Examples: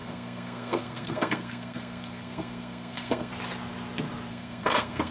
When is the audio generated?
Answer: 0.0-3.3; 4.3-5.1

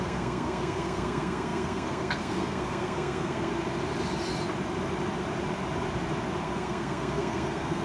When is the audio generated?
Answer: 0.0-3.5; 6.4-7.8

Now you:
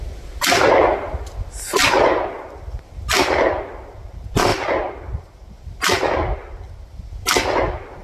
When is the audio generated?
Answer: none

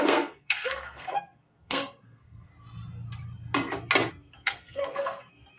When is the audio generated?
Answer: 0.0-2.5; 4.1-5.6

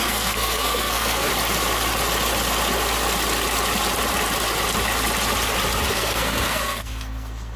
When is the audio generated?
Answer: 0.0-1.3; 5.9-7.6

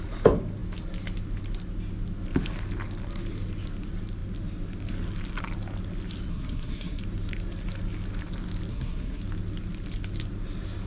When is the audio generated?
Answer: 6.3-7.0; 8.7-9.2